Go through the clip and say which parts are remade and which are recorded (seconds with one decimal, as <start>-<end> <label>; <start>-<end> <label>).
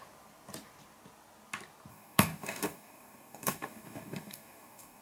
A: 0.0-1.9 recorded; 1.9-5.0 remade